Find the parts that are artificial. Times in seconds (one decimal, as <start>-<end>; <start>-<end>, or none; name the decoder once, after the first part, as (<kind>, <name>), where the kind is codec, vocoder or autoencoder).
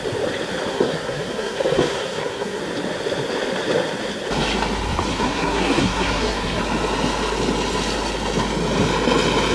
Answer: 0.7-2.6 (codec, SNAC); 5.1-6.6